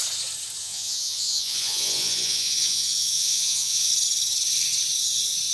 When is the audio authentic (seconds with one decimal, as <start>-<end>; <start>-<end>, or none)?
0.0-0.6; 3.9-5.5